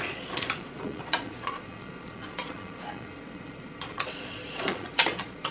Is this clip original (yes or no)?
no